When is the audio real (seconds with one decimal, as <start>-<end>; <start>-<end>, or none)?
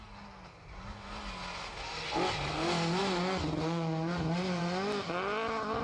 0.0-5.8